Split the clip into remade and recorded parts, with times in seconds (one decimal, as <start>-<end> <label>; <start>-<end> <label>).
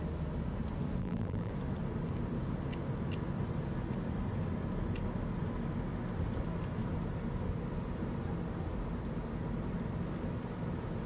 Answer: 0.0-1.0 recorded; 1.0-1.5 remade; 1.5-11.1 recorded